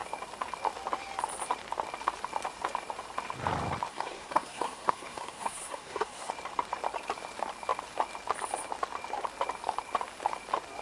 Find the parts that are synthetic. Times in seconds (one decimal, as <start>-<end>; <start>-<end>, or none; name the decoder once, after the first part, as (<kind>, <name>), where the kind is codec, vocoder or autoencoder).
3.9-6.3 (codec, SNAC)